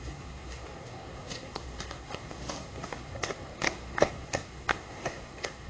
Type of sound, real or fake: fake